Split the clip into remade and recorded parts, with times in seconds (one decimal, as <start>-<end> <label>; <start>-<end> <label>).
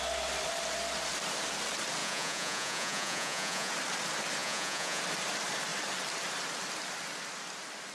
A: 0.0-2.0 recorded; 2.0-3.7 remade; 3.7-4.4 recorded; 4.4-5.0 remade; 5.0-7.9 recorded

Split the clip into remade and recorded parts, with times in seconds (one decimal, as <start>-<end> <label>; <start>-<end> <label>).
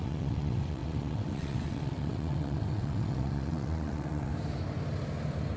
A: 0.0-4.3 remade; 4.3-5.6 recorded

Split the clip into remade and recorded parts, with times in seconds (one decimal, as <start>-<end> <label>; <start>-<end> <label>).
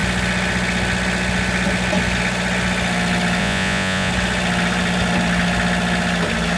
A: 0.0-3.4 recorded; 3.4-4.1 remade; 4.1-6.6 recorded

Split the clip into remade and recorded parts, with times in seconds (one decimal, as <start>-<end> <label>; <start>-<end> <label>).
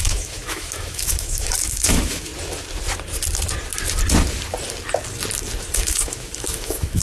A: 0.0-2.3 remade; 2.3-5.7 recorded; 5.7-7.0 remade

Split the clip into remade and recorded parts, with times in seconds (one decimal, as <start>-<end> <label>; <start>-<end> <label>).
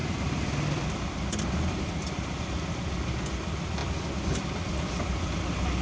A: 0.0-0.9 remade; 0.9-5.8 recorded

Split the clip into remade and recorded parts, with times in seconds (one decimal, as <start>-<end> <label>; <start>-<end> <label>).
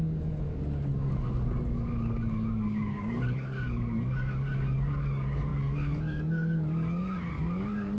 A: 0.0-8.0 remade